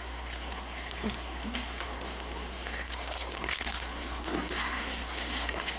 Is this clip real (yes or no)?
no